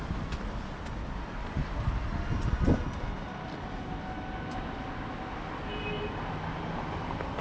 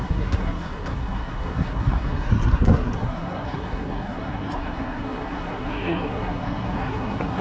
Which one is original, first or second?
first